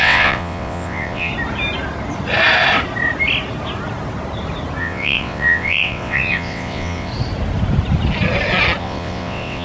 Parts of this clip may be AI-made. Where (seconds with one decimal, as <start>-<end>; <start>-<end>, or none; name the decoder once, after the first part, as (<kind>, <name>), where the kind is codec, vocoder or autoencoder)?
0.0-1.3 (vocoder, WaveNeXt); 4.8-7.1; 8.8-9.6